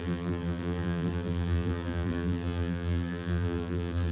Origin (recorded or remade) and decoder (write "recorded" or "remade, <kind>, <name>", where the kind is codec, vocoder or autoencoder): remade, vocoder, BigVGAN v2